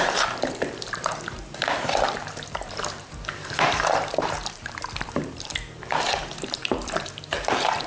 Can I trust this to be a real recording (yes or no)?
no